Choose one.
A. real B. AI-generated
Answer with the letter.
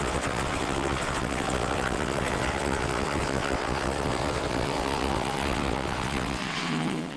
B